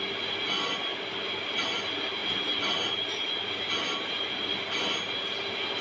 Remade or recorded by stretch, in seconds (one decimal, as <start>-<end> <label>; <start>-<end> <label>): 0.0-5.8 recorded

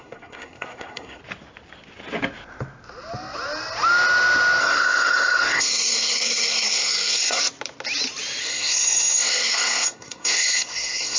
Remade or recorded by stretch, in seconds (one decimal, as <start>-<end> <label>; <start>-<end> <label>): 0.0-1.2 remade; 1.2-4.6 recorded; 4.6-7.4 remade; 7.4-8.4 recorded; 8.4-11.2 remade